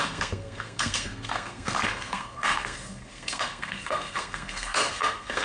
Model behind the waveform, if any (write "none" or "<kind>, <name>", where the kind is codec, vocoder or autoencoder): codec, SNAC